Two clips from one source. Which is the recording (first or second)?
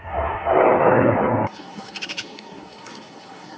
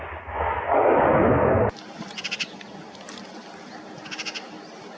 second